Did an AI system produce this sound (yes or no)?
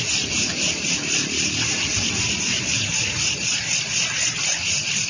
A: no